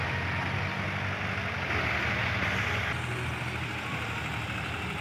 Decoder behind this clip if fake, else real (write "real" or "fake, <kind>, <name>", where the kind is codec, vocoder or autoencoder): real